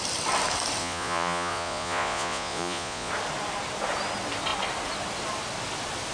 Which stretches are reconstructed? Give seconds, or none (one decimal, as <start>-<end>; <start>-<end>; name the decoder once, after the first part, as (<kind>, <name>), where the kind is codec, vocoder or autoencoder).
0.8-3.1 (vocoder, Vocos)